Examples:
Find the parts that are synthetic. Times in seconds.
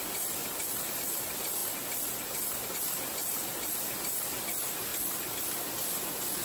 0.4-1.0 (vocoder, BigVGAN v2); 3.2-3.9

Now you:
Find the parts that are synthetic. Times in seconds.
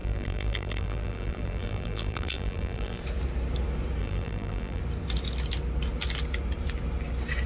0.0-3.0 (vocoder, BigVGAN v2); 4.0-4.8